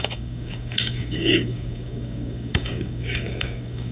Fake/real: fake